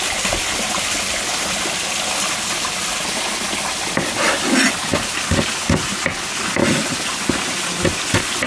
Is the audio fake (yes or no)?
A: no